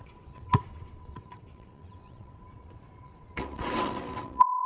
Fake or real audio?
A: fake